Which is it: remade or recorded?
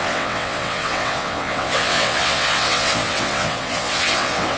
remade